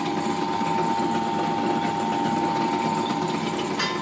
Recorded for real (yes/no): yes